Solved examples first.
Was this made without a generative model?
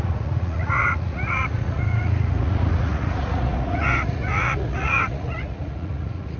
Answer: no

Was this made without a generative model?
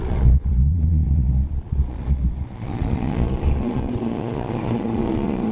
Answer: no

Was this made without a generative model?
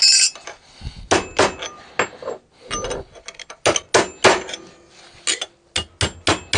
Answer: yes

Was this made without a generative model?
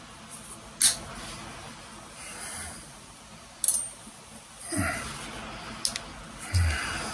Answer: yes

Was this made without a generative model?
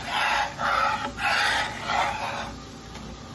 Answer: yes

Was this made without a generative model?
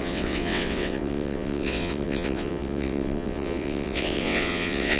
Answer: no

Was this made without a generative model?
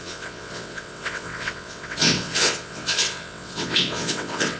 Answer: no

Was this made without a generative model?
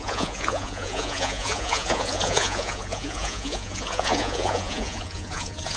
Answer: no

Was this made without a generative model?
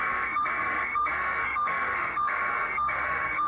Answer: no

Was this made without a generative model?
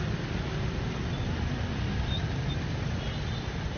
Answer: yes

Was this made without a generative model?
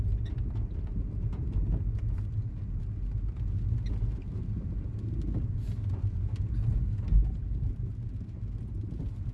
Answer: yes